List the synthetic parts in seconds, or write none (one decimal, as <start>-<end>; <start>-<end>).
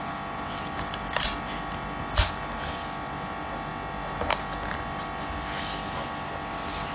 none